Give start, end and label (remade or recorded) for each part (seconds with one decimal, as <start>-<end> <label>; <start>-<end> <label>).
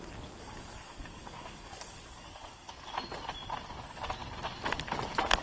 0.0-2.7 remade; 2.7-5.4 recorded